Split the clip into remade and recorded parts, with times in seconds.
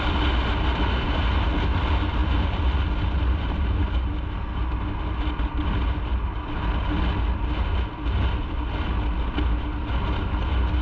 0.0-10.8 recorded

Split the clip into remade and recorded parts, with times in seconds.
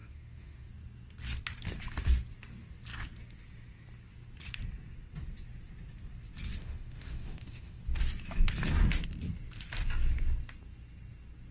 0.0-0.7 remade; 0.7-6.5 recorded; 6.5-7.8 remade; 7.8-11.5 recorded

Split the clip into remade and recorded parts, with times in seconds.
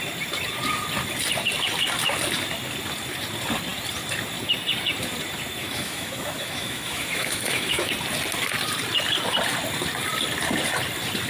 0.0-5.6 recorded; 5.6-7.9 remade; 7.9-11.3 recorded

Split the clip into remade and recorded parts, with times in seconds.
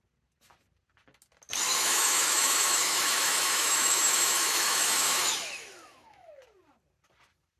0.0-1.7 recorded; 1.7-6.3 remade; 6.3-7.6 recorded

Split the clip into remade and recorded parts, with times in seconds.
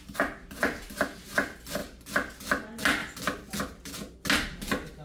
0.0-5.0 recorded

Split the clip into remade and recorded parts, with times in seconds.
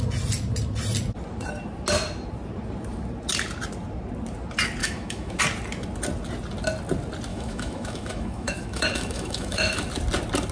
0.0-4.8 recorded; 4.8-5.4 remade; 5.4-7.3 recorded; 7.3-9.9 remade; 9.9-10.5 recorded